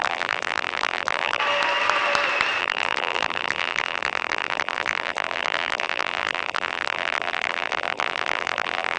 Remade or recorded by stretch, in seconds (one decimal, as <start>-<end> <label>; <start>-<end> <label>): 0.0-1.4 remade; 1.4-2.6 recorded; 2.6-9.0 remade

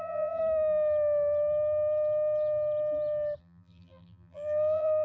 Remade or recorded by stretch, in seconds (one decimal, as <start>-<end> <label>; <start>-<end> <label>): 0.0-0.4 remade; 0.4-3.4 recorded; 3.4-5.0 remade

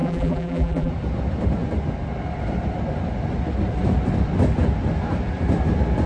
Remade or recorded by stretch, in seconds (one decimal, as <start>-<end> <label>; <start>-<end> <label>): 0.0-0.9 remade; 0.9-6.1 recorded

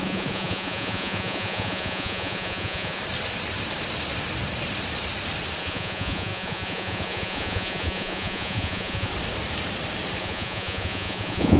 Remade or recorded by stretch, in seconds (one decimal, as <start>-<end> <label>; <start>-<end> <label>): 0.0-3.0 remade; 3.0-5.6 recorded; 5.6-9.1 remade; 9.1-10.2 recorded; 10.2-11.6 remade

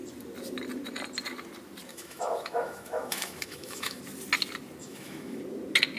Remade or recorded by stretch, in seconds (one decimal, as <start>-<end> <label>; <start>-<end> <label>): 0.0-1.9 recorded; 1.9-4.0 remade; 4.0-4.8 recorded; 4.8-5.4 remade; 5.4-6.0 recorded

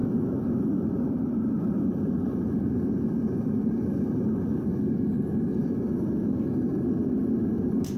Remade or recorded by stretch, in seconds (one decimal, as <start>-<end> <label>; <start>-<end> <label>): 0.0-8.0 recorded